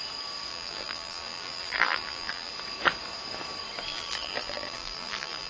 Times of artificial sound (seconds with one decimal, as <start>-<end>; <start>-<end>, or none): 0.5-2.5; 3.9-5.5